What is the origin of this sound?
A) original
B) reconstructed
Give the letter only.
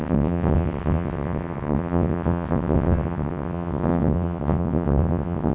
B